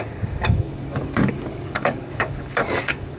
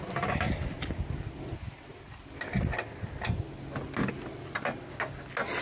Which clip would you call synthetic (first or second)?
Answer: first